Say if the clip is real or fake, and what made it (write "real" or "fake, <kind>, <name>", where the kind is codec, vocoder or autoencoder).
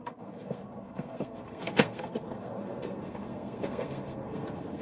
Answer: fake, codec, SNAC